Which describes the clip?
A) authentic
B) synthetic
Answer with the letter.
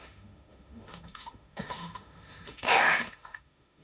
B